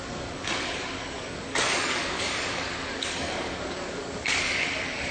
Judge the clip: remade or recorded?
remade